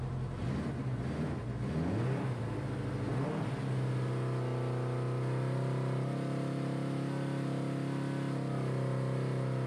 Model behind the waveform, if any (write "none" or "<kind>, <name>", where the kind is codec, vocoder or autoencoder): none